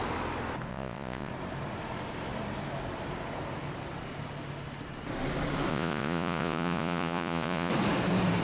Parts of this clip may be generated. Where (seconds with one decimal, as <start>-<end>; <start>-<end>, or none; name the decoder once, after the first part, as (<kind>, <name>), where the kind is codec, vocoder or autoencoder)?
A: 0.7-1.3 (vocoder, Vocos); 5.7-7.7